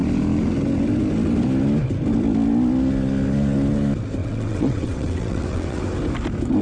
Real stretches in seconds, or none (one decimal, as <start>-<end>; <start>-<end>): 0.0-4.2; 5.8-6.6